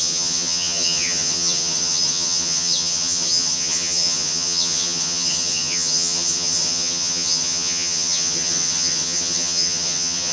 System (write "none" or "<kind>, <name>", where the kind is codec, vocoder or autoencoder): vocoder, HiFi-GAN